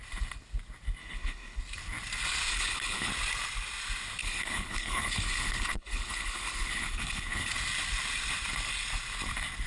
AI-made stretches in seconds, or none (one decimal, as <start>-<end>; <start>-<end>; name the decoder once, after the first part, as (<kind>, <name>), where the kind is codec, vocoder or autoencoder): 1.0-1.6 (codec, HILCodec); 2.5-3.1; 4.2-7.5

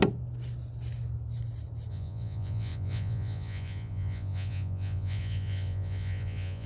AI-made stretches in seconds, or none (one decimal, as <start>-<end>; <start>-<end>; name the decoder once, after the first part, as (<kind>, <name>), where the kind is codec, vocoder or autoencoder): 1.9-6.7 (vocoder, Vocos)

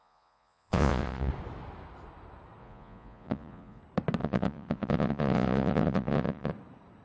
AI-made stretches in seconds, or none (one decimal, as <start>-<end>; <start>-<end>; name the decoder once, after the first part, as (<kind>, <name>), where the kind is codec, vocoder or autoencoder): 0.0-1.3 (vocoder, Vocos); 2.6-3.8; 4.2-6.5

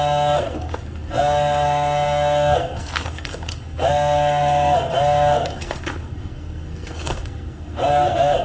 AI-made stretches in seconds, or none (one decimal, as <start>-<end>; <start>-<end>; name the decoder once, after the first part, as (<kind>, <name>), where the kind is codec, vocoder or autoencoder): 0.0-8.4 (codec, SNAC)

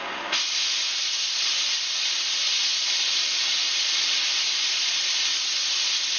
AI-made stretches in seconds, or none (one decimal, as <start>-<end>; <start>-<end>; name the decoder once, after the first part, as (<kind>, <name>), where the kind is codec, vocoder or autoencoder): 2.6-5.5 (vocoder, BigVGAN v2)

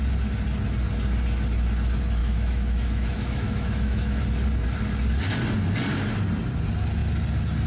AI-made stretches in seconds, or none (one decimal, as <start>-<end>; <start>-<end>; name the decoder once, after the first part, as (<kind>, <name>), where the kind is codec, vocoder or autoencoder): 2.2-4.2 (autoencoder, DAC-VAE)

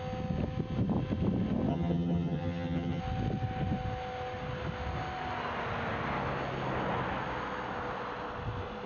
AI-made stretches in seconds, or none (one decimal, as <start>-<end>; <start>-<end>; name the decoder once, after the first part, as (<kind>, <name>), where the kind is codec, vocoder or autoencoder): 1.7-3.0 (vocoder, HiFi-GAN)

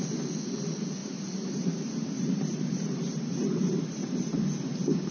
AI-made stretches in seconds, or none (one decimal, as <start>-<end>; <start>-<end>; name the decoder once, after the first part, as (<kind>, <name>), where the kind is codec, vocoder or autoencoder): 1.0-4.1 (vocoder, BigVGAN v2)